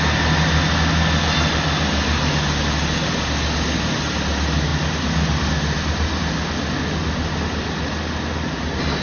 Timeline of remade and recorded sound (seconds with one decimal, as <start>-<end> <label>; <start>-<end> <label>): 0.0-9.0 recorded